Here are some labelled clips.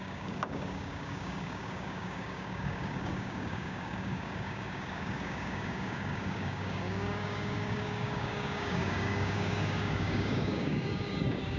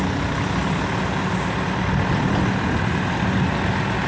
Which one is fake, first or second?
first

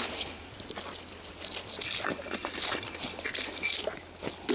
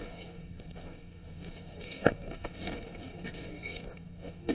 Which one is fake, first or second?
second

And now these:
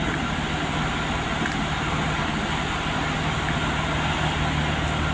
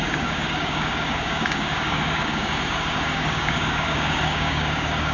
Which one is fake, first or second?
second